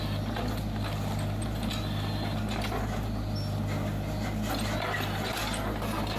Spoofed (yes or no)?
no